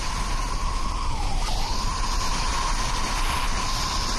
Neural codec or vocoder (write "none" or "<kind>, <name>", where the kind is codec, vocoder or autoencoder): none